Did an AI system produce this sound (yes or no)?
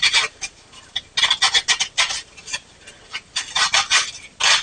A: no